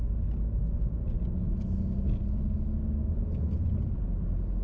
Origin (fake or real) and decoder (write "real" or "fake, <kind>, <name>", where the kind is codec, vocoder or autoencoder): real